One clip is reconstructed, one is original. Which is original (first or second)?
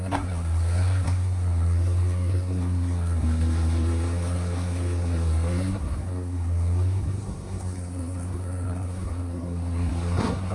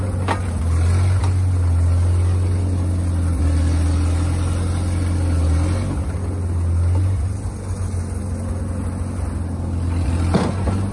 second